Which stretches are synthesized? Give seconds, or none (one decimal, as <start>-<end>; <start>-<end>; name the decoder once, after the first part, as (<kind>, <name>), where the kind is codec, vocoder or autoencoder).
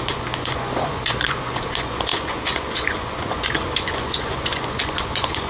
0.0-5.5 (vocoder, Vocos)